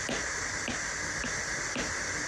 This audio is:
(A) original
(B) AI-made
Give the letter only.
A